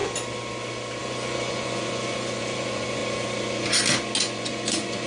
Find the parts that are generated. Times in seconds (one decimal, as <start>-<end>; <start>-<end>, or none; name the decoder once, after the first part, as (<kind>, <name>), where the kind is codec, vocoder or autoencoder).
1.0-3.0 (vocoder, Vocos); 4.2-5.1